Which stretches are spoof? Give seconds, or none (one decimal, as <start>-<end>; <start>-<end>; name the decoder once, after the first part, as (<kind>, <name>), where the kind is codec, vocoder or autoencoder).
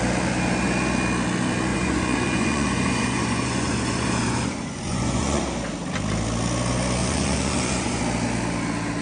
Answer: 1.7-5.4 (vocoder, Vocos); 7.0-8.0